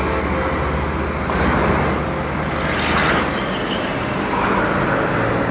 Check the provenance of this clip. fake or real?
real